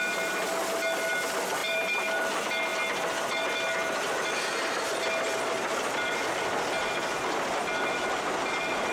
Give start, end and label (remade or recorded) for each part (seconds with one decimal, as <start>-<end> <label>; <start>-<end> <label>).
0.0-1.6 recorded; 1.6-2.1 remade; 2.1-8.9 recorded